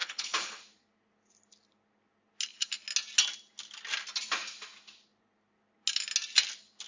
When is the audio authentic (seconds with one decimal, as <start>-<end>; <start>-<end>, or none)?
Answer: 0.6-6.9